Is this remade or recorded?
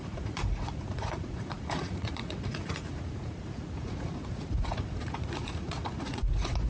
remade